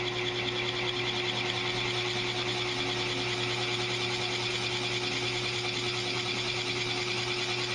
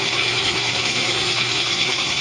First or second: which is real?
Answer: first